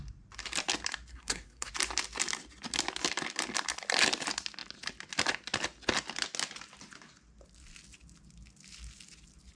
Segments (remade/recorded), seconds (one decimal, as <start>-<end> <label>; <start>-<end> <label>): 0.0-1.1 recorded; 1.1-1.7 remade; 1.7-9.6 recorded